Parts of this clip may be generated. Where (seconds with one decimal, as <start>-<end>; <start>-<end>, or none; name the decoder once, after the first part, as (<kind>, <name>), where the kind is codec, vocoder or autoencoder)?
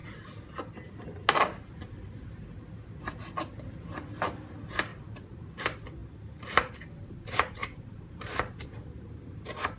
4.9-5.6 (vocoder, BigVGAN v2); 7.6-9.8